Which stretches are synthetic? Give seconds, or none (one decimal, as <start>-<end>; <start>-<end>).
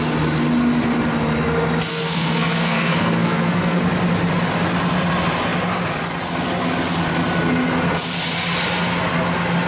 1.9-3.8